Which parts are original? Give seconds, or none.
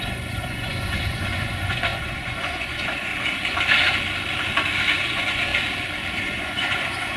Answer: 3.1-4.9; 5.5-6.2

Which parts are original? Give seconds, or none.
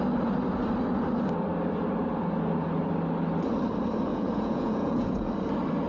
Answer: 0.0-4.1; 5.3-5.9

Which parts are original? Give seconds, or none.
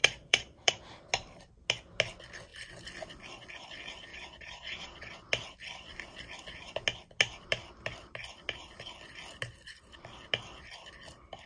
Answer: 0.8-4.1; 5.2-11.5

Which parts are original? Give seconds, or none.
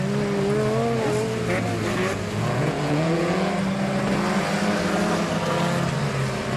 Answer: 0.0-2.1; 3.5-6.6